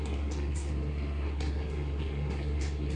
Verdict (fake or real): fake